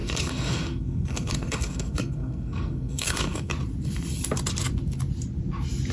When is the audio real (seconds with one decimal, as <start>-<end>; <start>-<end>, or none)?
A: 3.5-5.9